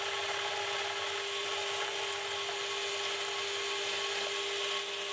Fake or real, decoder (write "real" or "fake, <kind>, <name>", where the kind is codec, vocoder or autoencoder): real